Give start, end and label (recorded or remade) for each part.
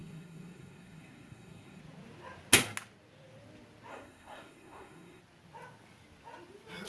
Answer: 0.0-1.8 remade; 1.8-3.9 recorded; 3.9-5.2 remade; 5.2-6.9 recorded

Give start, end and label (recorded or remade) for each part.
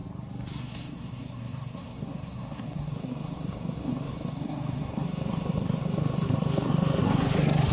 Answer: 0.0-0.6 recorded; 0.6-7.7 remade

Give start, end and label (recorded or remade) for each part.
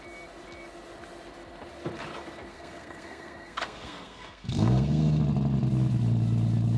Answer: 0.0-2.5 recorded; 2.5-5.2 remade; 5.2-6.8 recorded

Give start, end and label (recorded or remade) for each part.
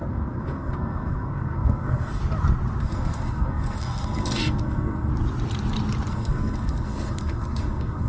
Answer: 0.0-2.2 remade; 2.2-2.8 recorded; 2.8-5.1 remade; 5.1-6.1 recorded; 6.1-8.1 remade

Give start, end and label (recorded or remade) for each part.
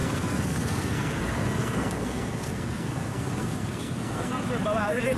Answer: 0.0-4.3 remade; 4.3-4.8 recorded; 4.8-5.2 remade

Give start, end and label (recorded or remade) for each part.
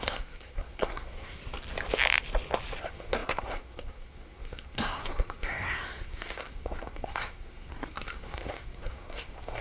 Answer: 0.0-1.4 remade; 1.4-2.8 recorded; 2.8-9.6 remade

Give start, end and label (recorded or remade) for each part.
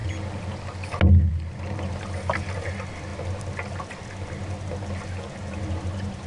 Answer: 0.0-6.3 recorded